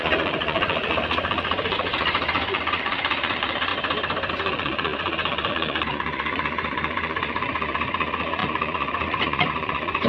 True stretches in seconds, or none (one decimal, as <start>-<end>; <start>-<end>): 3.7-4.3